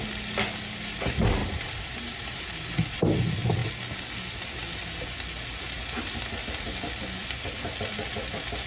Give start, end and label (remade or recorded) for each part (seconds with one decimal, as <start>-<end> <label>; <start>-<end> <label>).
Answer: 0.0-1.4 recorded; 1.4-2.4 remade; 2.4-8.7 recorded